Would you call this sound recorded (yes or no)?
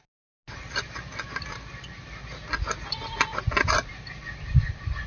yes